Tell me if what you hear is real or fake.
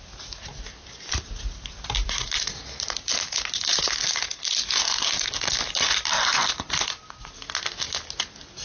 real